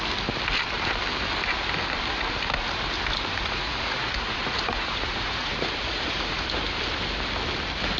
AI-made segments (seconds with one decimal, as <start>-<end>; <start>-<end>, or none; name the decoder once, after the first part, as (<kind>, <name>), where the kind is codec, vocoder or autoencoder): 3.4-6.4 (vocoder, Vocos)